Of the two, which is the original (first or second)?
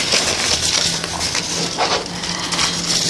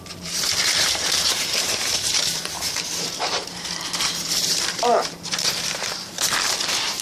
first